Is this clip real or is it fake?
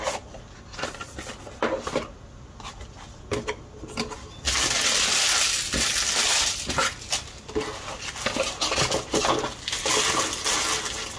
real